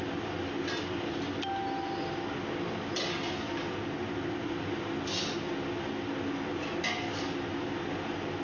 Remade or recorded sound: recorded